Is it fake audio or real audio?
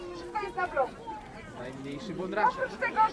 fake